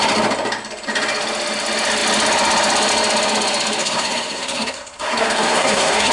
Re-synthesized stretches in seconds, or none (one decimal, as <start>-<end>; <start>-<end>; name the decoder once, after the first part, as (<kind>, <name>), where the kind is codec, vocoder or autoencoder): 3.8-6.1 (codec, SNAC)